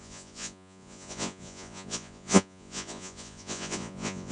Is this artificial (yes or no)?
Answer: yes